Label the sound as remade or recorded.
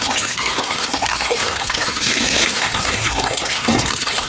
remade